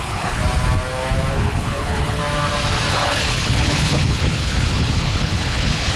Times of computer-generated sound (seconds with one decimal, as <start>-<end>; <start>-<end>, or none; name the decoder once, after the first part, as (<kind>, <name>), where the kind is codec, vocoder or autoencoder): 0.0-0.4 (codec, HILCodec); 1.3-2.2; 2.9-6.0